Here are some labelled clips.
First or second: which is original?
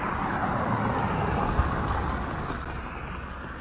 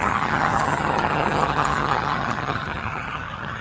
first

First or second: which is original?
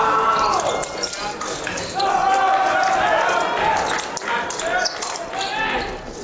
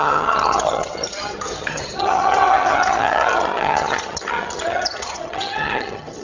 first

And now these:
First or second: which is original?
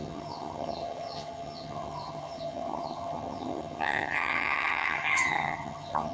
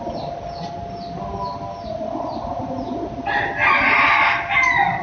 second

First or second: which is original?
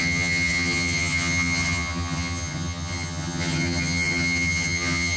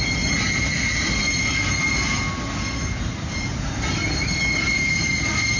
second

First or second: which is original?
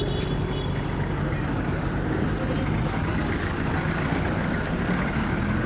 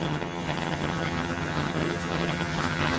first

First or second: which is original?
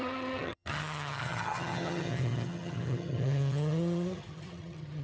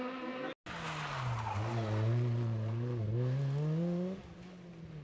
second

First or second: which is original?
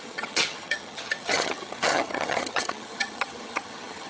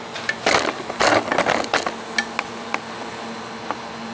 second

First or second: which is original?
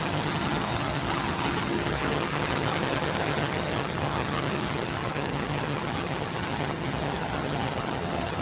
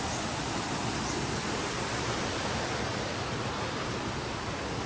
second